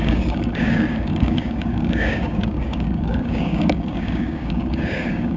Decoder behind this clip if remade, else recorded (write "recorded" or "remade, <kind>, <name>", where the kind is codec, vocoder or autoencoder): remade, codec, DAC